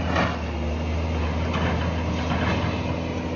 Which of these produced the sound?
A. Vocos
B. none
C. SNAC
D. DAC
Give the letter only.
B